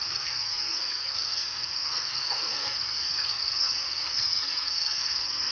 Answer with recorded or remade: remade